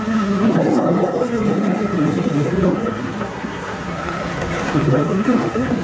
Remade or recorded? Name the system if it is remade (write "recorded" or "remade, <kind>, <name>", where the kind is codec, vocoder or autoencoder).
remade, codec, SNAC